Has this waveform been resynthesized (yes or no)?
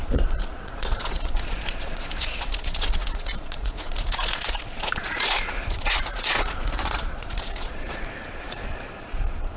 yes